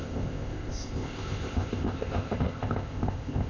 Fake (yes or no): yes